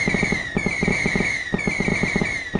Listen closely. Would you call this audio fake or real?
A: real